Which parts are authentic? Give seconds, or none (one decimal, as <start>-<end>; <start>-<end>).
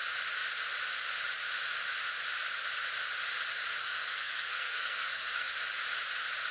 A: 0.0-3.8; 5.5-6.5